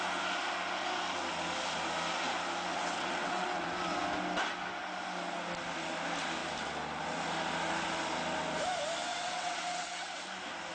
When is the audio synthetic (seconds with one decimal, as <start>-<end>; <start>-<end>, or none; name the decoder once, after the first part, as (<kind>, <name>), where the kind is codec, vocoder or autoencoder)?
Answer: 2.7-4.0 (vocoder, WaveNeXt); 9.1-10.2